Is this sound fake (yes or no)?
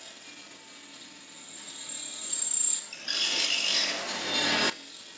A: no